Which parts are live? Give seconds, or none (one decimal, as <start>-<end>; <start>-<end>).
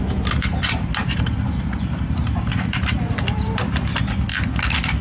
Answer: 0.0-1.0; 4.0-5.0